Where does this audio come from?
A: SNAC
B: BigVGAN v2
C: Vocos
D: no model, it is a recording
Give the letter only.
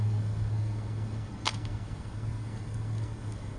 A